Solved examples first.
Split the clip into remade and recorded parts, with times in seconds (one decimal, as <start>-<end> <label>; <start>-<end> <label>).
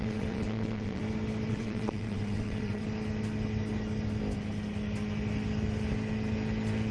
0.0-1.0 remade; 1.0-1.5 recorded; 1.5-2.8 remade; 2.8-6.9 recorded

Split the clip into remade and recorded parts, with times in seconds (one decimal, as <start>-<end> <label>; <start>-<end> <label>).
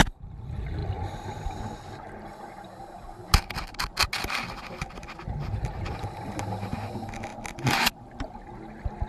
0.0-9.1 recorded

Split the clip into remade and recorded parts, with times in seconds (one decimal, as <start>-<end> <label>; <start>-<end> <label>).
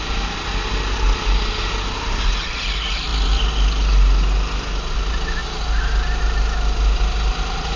0.0-7.8 recorded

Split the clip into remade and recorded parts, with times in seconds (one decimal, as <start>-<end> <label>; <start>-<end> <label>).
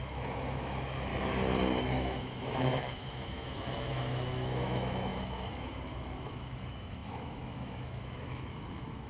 0.0-1.1 remade; 1.1-1.8 recorded; 1.8-9.1 remade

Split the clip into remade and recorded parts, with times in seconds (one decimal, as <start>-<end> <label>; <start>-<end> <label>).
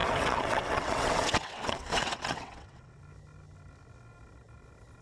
0.0-3.0 remade; 3.0-5.0 recorded